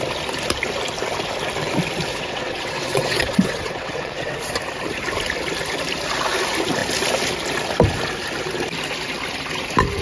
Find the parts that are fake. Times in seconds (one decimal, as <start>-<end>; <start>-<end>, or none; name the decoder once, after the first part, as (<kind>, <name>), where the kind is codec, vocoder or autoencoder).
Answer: 2.1-4.4 (vocoder, WaveNeXt)

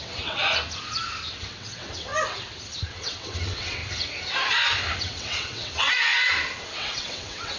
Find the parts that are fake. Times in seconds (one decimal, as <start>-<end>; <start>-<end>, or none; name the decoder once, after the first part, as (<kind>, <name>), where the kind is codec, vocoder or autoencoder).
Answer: 0.0-0.4 (vocoder, WaveNeXt); 1.3-2.1; 2.9-3.8; 5.0-6.1; 6.7-7.6

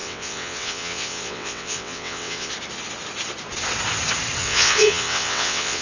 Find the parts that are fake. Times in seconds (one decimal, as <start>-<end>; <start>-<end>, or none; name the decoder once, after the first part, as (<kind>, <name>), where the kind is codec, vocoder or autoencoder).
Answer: 0.0-2.5 (vocoder, WaveNeXt); 4.4-5.8

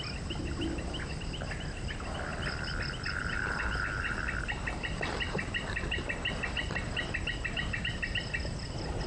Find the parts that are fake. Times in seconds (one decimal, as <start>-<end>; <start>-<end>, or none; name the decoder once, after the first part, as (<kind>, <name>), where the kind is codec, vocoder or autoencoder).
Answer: none

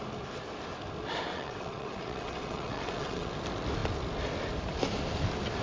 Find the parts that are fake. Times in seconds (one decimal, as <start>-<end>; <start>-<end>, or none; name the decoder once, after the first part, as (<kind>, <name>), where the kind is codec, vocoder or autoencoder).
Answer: 1.3-3.3 (vocoder, WaveNeXt)

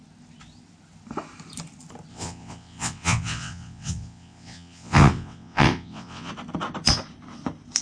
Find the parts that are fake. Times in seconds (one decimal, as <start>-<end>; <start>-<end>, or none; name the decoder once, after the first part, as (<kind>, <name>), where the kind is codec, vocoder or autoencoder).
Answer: 2.1-6.3 (vocoder, WaveNeXt)

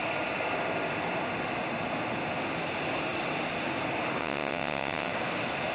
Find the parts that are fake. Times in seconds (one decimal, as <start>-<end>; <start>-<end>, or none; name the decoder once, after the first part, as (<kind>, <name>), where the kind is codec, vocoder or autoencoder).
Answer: 4.2-5.1 (vocoder, WaveNeXt)

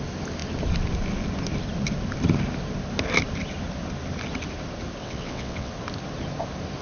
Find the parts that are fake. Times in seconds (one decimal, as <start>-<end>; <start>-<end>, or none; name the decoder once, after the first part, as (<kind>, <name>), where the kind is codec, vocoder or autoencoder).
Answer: 5.0-5.7 (vocoder, WaveNeXt)